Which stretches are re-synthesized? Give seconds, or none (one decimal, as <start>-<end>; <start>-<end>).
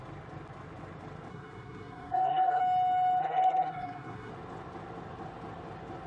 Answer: 1.3-2.6; 3.2-4.3